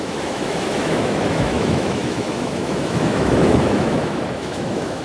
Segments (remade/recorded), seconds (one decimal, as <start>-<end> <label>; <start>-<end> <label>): 0.0-5.0 remade

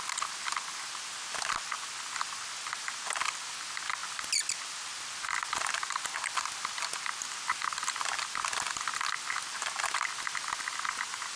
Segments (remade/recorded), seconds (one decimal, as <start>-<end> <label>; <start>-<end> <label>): 0.0-11.4 recorded

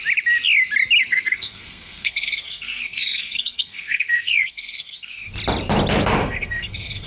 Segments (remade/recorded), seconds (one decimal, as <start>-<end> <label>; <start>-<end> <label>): 0.0-1.0 recorded; 1.0-5.3 remade; 5.3-6.2 recorded; 6.2-7.1 remade

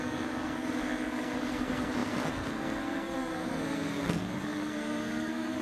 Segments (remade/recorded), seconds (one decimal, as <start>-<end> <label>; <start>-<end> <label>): 0.0-5.6 remade

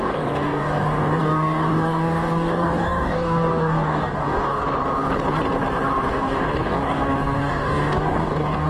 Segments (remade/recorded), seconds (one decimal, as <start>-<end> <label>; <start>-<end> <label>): 0.0-4.6 remade; 4.6-6.1 recorded; 6.1-8.7 remade

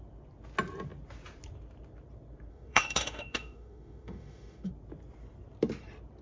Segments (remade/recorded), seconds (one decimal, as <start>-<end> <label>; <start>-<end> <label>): 0.0-2.5 recorded; 2.5-4.7 remade; 4.7-6.2 recorded

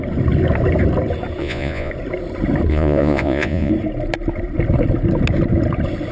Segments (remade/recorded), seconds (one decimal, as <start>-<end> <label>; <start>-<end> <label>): 0.0-1.4 recorded; 1.4-1.9 remade; 1.9-2.7 recorded; 2.7-3.7 remade; 3.7-6.1 recorded